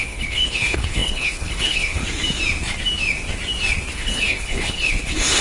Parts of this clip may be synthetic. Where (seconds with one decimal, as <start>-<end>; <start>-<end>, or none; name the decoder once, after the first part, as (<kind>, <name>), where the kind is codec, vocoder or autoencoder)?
0.0-2.0 (codec, HILCodec); 3.9-5.4

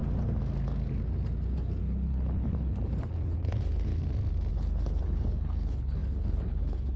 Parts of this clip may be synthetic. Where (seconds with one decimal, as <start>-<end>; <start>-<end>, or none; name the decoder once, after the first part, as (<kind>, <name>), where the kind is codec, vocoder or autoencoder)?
1.8-3.9 (codec, HILCodec); 4.5-7.0

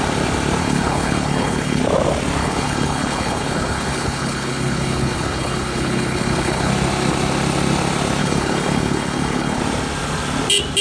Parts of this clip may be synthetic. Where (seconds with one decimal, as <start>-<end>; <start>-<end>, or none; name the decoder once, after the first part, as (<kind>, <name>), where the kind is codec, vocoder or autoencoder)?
0.6-1.8 (codec, HILCodec); 2.4-6.7; 8.2-9.6

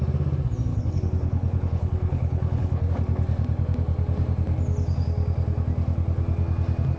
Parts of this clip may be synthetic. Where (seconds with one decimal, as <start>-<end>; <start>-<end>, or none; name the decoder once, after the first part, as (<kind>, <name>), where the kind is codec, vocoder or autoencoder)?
0.7-2.9 (codec, HILCodec)

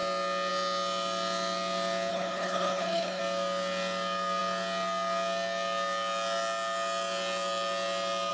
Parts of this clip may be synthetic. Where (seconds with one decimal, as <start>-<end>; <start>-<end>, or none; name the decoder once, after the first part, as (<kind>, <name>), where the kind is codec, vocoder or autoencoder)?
2.1-3.2 (codec, HILCodec)

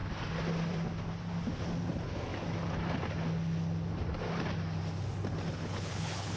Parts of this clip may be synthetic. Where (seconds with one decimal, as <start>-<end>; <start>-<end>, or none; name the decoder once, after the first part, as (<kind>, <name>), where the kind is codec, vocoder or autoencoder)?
1.9-2.3 (codec, HILCodec); 5.5-6.4